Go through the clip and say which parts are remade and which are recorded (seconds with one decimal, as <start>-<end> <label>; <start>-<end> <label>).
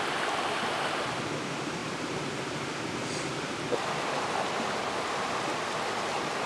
0.0-6.5 recorded